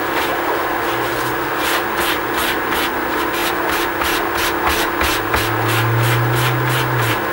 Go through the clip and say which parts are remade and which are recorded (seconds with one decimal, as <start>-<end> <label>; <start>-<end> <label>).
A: 0.0-7.3 recorded